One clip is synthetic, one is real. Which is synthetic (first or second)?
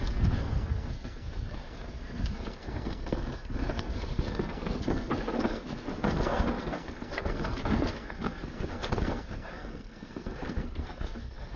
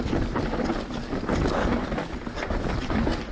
first